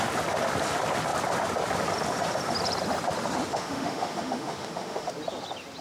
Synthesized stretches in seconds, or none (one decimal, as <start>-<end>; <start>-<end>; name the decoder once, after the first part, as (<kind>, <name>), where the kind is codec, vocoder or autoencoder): 3.5-5.1 (autoencoder, DAC-VAE)